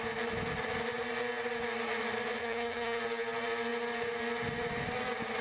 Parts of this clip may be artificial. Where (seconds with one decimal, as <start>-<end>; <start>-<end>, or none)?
2.4-3.0